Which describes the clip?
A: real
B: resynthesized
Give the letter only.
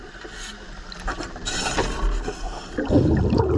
A